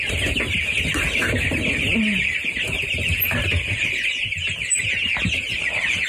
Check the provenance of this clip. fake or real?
real